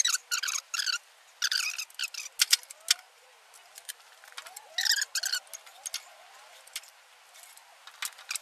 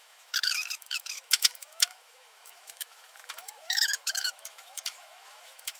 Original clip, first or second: first